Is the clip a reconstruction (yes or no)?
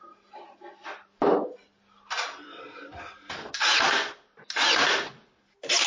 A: no